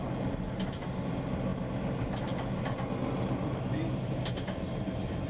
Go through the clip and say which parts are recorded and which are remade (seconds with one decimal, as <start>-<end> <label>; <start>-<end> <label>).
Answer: 0.0-5.3 recorded